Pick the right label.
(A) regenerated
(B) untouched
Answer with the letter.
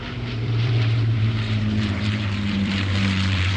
A